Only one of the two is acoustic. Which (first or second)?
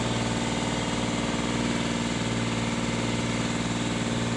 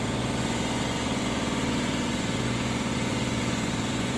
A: first